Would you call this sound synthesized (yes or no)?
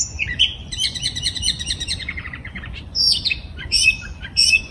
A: yes